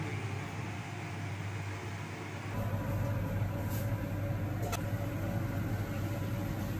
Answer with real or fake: real